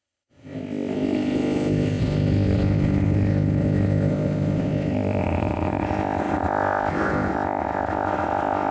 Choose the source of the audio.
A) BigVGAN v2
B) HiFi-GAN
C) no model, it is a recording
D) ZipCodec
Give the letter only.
D